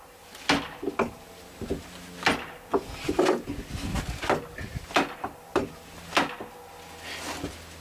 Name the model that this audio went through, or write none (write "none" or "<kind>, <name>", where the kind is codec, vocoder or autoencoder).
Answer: none